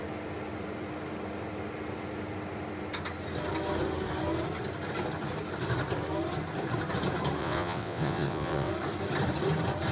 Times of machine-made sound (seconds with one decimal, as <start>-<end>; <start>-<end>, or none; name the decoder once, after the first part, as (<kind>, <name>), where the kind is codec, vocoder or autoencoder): 7.4-8.7 (vocoder, WaveNeXt)